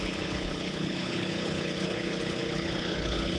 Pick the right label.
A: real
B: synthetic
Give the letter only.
B